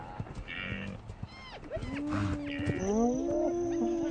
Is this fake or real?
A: real